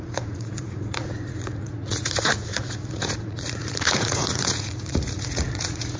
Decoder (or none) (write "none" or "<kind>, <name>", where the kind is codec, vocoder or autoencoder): vocoder, Vocos